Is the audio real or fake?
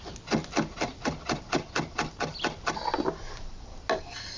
real